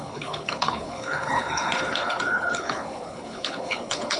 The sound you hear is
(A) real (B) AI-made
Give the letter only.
B